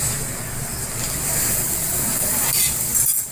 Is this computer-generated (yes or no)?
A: no